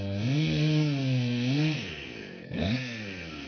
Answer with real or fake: fake